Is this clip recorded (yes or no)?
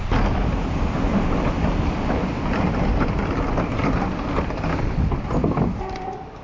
yes